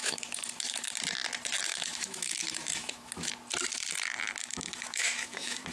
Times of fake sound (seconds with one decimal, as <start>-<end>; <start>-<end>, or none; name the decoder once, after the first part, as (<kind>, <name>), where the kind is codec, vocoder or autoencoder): 0.0-0.9 (autoencoder, DAC-VAE); 1.7-3.3; 4.4-5.7